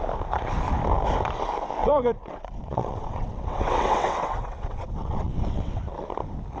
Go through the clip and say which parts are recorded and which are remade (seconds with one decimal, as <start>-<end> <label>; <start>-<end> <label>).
0.0-1.8 recorded; 1.8-5.8 remade; 5.8-6.6 recorded

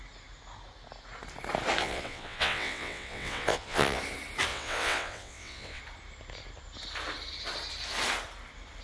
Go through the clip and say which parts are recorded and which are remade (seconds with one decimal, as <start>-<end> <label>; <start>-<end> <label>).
0.0-1.8 recorded; 1.8-4.0 remade; 4.0-4.5 recorded; 4.5-5.8 remade; 5.8-8.8 recorded